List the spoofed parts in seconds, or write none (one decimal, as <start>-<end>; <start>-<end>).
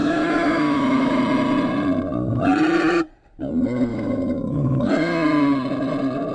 0.0-1.2; 3.9-4.9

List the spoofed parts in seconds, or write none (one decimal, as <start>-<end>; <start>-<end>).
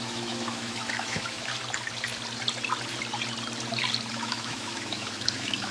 0.0-1.5; 4.1-5.7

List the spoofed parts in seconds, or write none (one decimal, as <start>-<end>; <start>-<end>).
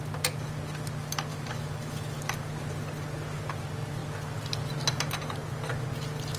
1.3-2.2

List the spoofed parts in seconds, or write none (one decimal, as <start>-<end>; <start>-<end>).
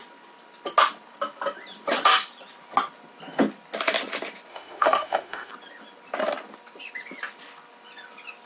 4.5-5.5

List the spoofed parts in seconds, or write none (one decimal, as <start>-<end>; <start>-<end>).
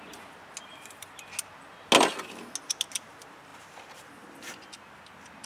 none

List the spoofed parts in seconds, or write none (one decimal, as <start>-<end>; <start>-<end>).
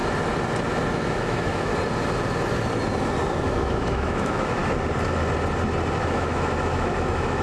0.9-1.7; 3.4-4.6; 6.0-7.4